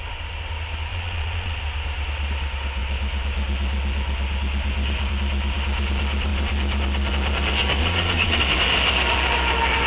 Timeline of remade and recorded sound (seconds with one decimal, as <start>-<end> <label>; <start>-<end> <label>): 0.0-0.9 recorded; 0.9-1.6 remade; 1.6-7.8 recorded; 7.8-8.4 remade; 8.4-9.9 recorded